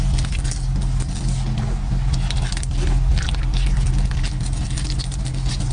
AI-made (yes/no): no